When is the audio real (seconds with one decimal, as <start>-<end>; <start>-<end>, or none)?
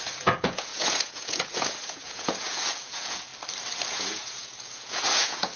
3.3-3.9